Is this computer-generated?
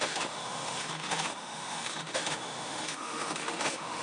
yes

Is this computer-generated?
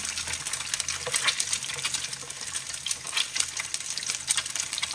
no